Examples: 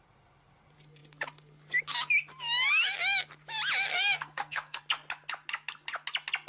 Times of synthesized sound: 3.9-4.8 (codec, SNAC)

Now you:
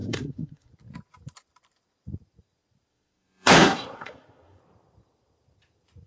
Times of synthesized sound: 0.0-0.7 (codec, SNAC); 2.9-4.6

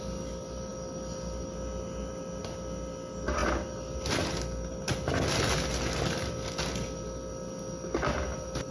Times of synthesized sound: none

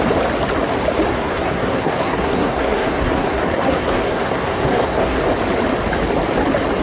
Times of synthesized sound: 1.1-5.2 (codec, SNAC)